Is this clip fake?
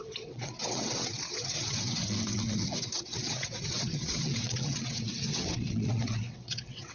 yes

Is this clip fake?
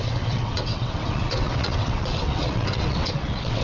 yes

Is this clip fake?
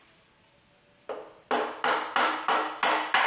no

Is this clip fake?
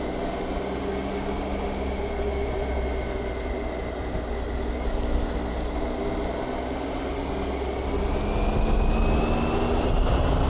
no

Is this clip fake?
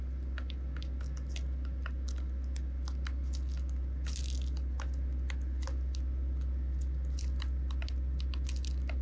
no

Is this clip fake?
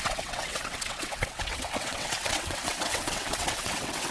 yes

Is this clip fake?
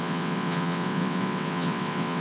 yes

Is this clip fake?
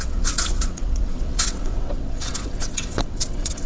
yes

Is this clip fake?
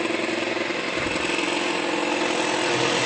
no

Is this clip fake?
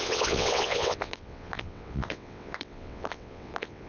yes